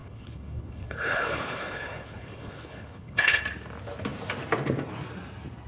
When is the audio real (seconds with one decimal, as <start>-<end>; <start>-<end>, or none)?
3.4-5.7